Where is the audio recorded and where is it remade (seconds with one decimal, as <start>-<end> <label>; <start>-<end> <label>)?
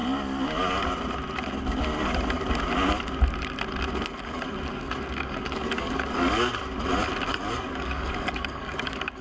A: 0.0-4.7 recorded; 4.7-6.5 remade; 6.5-7.3 recorded; 7.3-9.2 remade